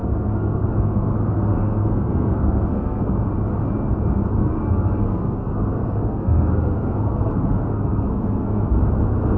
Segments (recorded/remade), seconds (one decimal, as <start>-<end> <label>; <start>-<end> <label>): 0.0-3.0 remade; 3.0-4.4 recorded; 4.4-8.8 remade; 8.8-9.4 recorded